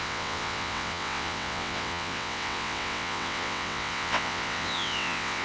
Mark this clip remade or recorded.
remade